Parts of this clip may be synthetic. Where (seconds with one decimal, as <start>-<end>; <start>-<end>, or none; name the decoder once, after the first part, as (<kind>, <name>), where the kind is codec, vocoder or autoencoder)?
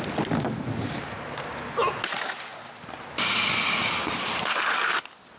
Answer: none